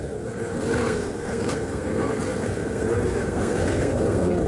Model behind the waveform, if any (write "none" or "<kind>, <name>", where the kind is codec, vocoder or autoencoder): codec, SNAC